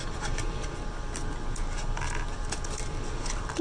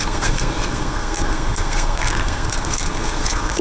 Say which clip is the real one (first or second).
first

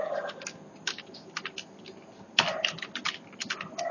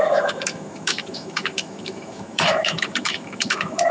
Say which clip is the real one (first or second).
first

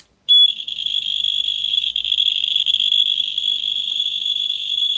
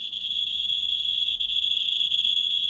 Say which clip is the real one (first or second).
first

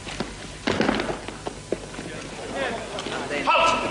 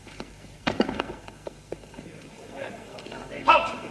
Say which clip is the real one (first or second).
first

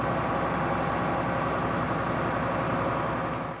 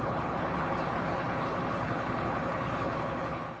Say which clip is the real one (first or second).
first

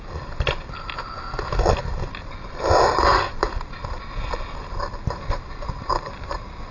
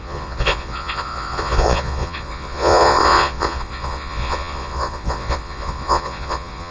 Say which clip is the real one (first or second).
first